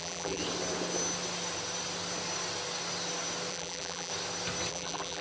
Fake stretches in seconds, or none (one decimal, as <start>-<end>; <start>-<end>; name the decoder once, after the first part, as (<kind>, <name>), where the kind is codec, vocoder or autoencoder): 0.0-0.4 (vocoder, BigVGAN v2); 3.5-4.1; 4.7-5.2